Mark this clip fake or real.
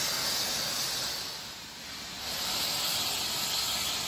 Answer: real